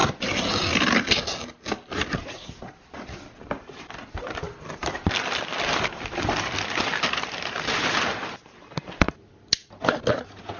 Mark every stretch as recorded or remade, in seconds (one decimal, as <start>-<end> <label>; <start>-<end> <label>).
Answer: 0.0-10.6 recorded